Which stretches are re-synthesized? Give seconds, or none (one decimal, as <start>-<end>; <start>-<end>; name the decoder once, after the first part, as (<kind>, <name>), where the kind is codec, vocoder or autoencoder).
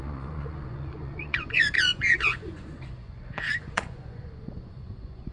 0.0-5.3 (vocoder, Vocos)